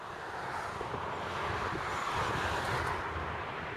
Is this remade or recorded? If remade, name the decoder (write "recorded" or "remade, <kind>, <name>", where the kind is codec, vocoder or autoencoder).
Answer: recorded